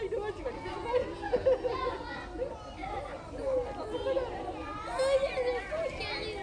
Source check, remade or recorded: recorded